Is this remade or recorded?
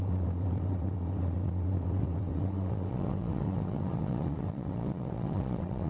remade